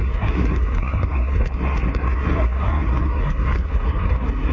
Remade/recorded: remade